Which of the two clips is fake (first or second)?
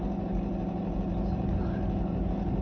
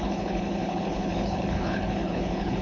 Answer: second